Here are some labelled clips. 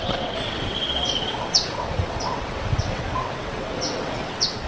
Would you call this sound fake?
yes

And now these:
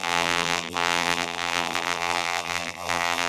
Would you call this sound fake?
yes